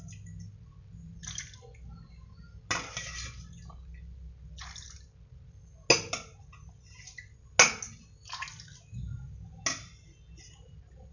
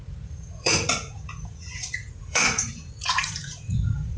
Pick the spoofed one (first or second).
second